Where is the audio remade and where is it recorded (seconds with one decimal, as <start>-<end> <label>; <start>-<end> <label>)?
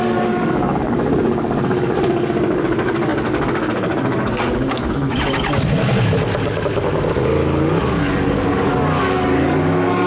0.0-10.1 remade